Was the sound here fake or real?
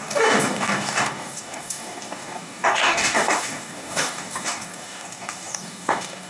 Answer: fake